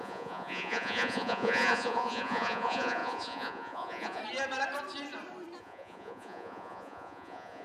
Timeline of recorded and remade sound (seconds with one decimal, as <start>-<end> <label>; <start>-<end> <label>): 0.0-4.2 remade; 4.2-5.6 recorded; 5.6-7.6 remade